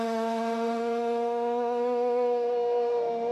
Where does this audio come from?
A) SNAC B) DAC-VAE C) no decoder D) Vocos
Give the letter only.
B